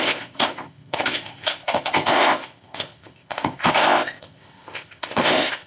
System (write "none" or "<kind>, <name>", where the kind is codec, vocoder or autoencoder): codec, ZipCodec